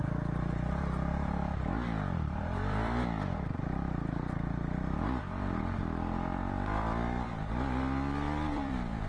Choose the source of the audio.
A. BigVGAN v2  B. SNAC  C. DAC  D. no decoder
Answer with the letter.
A